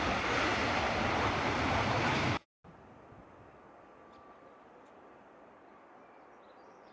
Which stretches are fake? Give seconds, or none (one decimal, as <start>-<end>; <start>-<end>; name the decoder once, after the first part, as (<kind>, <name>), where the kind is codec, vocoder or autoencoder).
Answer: 0.0-6.9 (vocoder, BigVGAN v2)

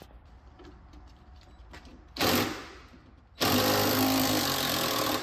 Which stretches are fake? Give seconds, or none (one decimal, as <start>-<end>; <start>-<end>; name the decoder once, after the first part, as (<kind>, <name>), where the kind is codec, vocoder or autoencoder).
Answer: none